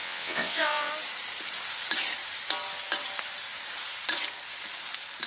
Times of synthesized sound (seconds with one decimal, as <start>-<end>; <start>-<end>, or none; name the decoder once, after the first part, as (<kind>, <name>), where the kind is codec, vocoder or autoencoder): 0.0-0.9 (vocoder, WaveNeXt)